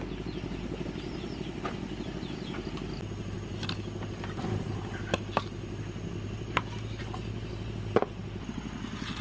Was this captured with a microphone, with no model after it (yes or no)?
yes